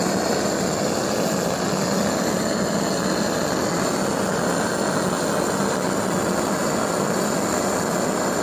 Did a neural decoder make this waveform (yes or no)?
no